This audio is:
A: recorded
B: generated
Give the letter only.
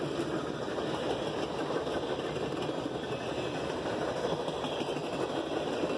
A